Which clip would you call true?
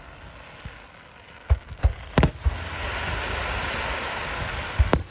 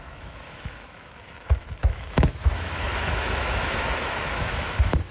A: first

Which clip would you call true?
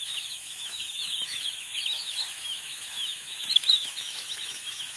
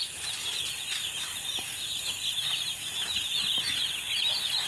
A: second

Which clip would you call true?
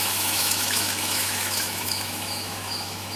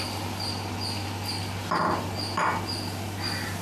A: second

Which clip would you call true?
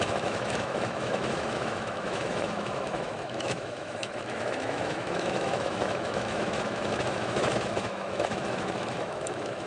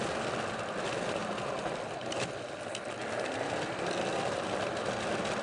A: second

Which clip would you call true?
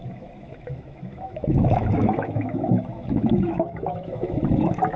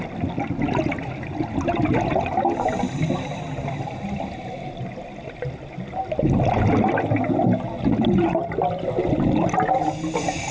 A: second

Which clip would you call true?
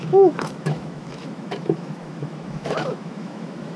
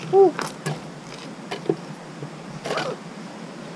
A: second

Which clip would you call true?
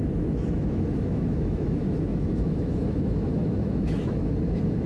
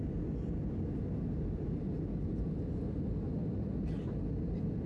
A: second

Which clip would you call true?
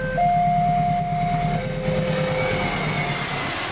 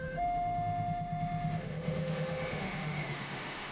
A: first